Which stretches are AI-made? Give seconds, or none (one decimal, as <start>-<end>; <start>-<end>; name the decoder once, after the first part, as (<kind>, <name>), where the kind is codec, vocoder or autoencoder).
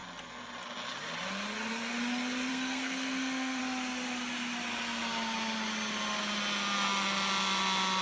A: 2.5-3.6 (codec, SNAC)